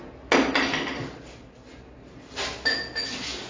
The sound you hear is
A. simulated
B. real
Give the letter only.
B